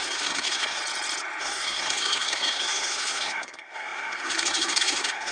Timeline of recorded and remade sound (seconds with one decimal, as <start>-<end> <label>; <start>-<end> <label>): 0.0-0.8 remade; 0.8-1.4 recorded; 1.4-5.3 remade

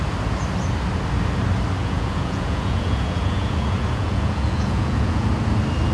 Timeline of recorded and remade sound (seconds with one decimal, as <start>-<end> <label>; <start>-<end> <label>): 0.0-1.8 recorded; 1.8-5.3 remade; 5.3-5.9 recorded